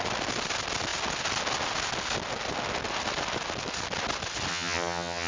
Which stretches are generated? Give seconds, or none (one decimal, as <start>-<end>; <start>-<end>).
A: 4.5-5.3